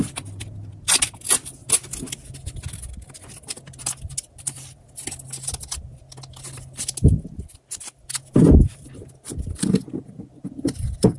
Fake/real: real